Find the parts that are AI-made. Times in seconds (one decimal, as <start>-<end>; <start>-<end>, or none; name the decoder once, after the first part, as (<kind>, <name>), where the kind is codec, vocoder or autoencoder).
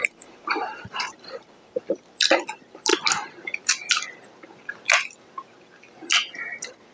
0.0-1.7 (vocoder, BigVGAN v2)